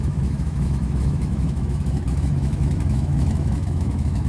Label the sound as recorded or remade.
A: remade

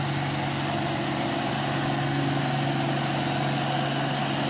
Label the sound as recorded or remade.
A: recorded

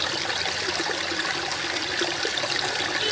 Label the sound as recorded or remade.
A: recorded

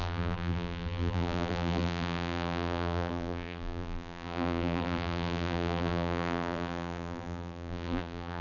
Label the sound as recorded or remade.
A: remade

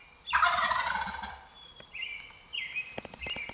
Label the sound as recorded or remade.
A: remade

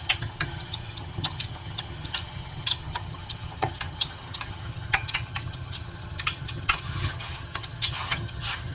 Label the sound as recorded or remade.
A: remade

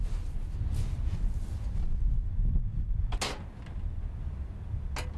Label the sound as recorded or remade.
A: recorded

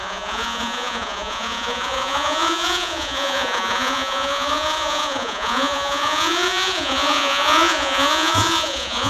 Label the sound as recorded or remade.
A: remade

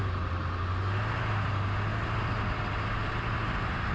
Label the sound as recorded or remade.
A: recorded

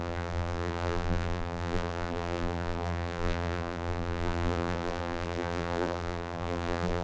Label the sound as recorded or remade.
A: remade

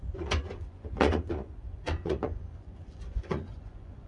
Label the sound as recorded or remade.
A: remade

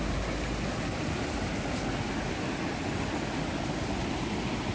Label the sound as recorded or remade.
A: recorded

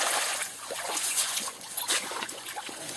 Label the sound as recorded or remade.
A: remade